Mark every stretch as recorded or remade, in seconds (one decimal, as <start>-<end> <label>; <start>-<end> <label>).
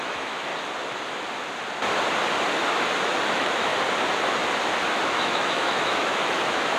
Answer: 0.0-0.5 remade; 0.5-3.3 recorded; 3.3-3.7 remade; 3.7-4.9 recorded; 4.9-6.8 remade